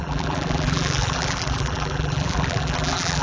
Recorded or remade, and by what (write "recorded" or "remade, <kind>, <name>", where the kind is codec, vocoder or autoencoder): remade, vocoder, BigVGAN v2